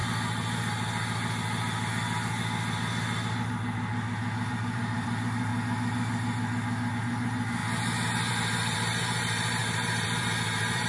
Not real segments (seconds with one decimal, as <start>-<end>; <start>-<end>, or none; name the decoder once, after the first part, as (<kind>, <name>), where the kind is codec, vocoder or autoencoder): 4.5-5.5 (vocoder, BigVGAN v2); 7.0-7.6; 8.3-10.9